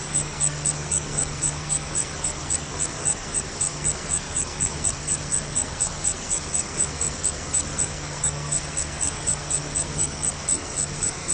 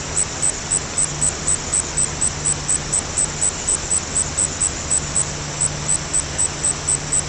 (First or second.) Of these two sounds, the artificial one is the first